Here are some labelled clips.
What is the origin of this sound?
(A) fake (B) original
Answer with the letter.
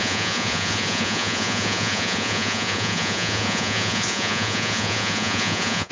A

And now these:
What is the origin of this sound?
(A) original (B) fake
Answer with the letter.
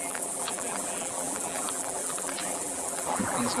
B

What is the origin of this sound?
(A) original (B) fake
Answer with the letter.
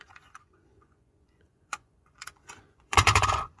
B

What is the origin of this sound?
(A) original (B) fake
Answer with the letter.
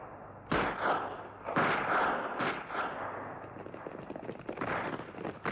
A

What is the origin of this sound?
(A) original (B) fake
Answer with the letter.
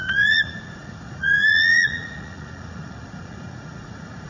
B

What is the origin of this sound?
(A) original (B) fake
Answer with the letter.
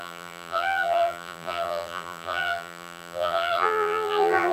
B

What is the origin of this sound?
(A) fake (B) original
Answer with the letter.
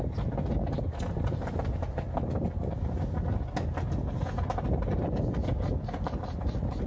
B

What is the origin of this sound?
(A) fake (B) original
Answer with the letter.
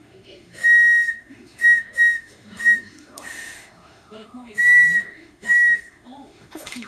A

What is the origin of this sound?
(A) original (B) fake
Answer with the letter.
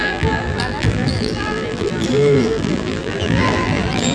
B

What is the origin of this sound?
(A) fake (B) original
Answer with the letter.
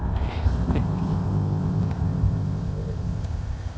A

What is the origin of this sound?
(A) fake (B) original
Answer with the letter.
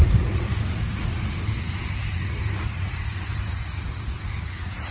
A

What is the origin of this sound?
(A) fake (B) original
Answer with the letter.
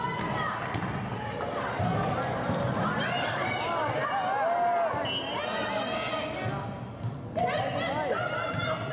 B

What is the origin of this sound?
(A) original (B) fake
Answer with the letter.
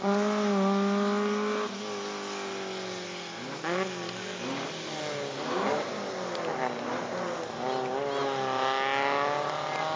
A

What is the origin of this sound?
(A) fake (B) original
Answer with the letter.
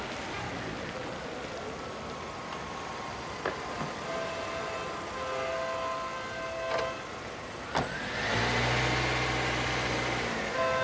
B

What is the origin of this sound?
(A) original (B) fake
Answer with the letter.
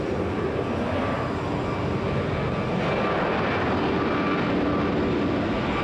A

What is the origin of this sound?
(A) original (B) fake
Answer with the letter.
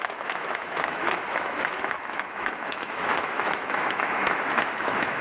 B